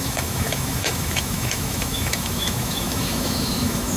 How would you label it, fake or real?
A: fake